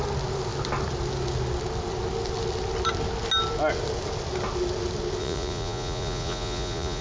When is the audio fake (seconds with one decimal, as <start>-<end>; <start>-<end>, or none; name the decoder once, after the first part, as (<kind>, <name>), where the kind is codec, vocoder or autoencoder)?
5.2-7.0 (vocoder, Vocos)